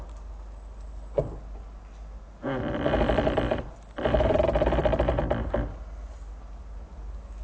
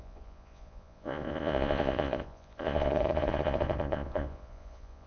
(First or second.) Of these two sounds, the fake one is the second